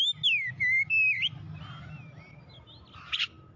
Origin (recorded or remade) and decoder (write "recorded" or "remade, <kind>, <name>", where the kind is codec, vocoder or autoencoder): recorded